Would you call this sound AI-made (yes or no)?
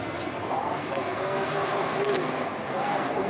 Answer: yes